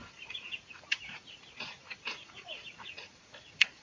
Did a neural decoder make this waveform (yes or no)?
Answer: yes